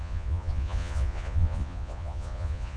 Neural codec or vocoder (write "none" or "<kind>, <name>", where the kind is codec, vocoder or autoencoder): vocoder, Vocos